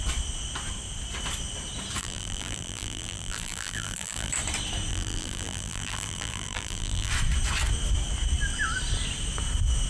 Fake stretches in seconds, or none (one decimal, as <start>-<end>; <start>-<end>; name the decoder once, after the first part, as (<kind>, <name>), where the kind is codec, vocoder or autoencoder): 2.0-4.3 (vocoder, BigVGAN v2); 4.9-7.1